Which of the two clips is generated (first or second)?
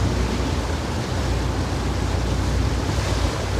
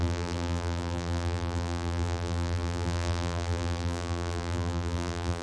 second